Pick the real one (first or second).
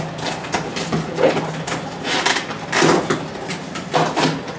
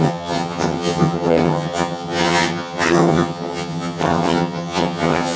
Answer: first